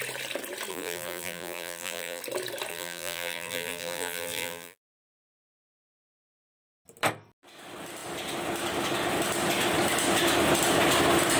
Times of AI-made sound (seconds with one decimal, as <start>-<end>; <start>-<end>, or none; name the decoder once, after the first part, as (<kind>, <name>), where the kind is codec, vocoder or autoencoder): 0.7-2.2 (vocoder, BigVGAN v2); 2.7-6.4